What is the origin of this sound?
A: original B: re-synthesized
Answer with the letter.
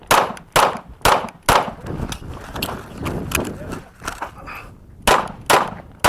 A